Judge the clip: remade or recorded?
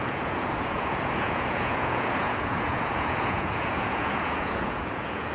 remade